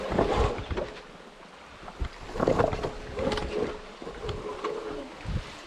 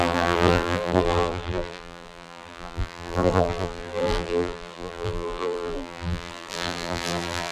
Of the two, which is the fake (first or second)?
second